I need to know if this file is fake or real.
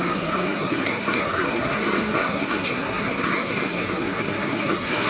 fake